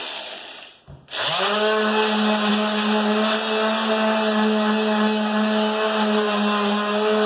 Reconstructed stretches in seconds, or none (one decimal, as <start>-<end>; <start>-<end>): none